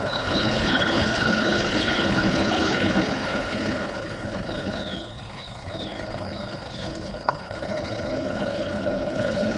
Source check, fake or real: fake